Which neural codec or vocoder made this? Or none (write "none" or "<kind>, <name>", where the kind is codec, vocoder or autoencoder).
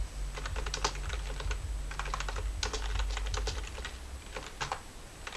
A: none